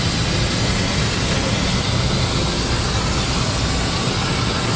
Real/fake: real